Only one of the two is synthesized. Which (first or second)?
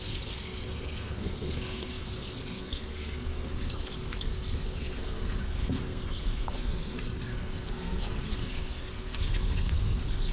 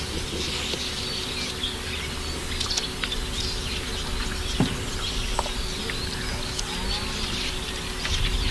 first